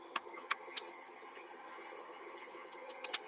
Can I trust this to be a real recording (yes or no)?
no